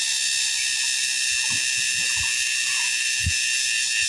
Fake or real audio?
real